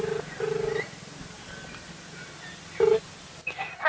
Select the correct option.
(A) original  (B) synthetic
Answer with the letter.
A